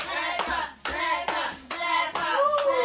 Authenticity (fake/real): real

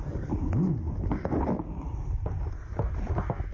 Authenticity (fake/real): real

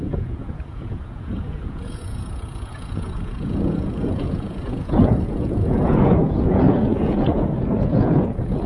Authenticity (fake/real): fake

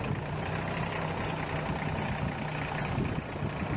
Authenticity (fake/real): real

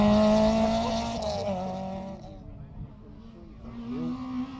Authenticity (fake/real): real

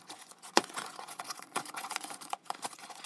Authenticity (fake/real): fake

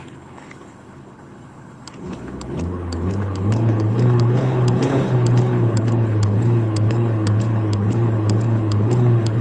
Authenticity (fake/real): fake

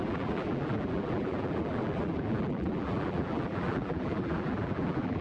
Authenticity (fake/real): fake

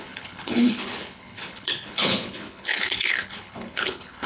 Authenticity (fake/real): fake